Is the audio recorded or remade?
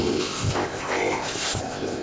remade